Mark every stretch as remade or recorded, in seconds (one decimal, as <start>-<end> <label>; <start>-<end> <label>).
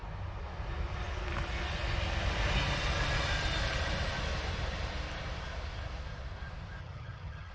0.0-6.8 recorded; 6.8-7.5 remade